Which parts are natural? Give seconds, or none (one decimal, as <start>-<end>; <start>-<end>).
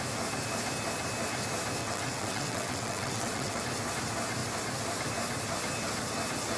0.0-1.8; 3.6-6.6